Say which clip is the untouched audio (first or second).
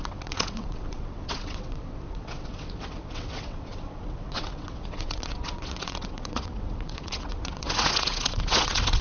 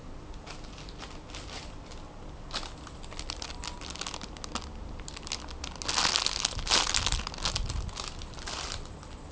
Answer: second